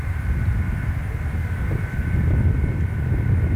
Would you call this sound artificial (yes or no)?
no